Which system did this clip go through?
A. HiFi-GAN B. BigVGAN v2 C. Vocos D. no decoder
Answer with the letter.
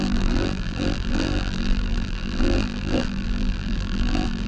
B